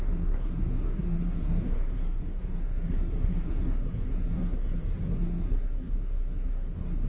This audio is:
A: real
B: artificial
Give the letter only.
B